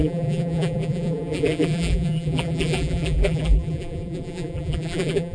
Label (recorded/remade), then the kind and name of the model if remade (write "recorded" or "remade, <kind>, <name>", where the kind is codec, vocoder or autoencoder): remade, vocoder, BigVGAN v2